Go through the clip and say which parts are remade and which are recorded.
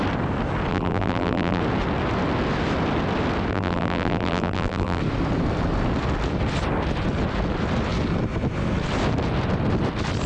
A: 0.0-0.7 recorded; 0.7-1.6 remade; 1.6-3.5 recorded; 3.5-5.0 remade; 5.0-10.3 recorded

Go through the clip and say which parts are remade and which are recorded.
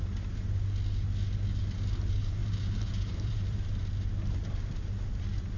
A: 0.0-2.4 recorded; 2.4-3.8 remade; 3.8-5.6 recorded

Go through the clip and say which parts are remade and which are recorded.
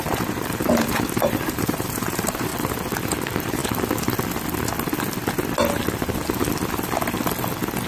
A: 0.0-2.5 remade; 2.5-3.1 recorded; 3.1-3.6 remade; 3.6-7.9 recorded